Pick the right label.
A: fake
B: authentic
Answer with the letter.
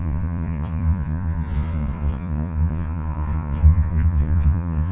A